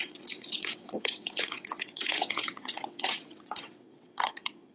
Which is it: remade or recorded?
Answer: remade